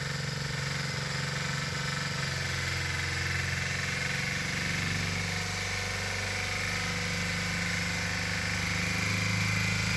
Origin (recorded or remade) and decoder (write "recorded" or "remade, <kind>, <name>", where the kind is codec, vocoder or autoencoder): recorded